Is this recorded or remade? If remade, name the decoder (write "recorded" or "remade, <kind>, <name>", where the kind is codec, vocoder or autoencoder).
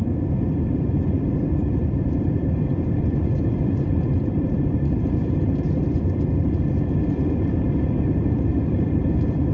remade, vocoder, BigVGAN v2